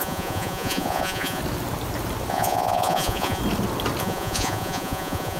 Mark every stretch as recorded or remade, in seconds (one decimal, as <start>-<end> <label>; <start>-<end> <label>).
0.0-1.4 remade; 1.4-2.3 recorded; 2.3-3.4 remade; 3.4-4.0 recorded; 4.0-5.4 remade